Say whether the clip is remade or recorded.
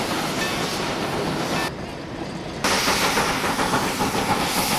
recorded